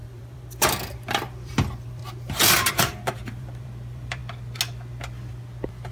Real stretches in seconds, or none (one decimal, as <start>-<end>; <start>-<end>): 2.0-2.7; 4.2-5.9